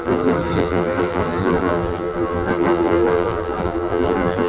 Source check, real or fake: fake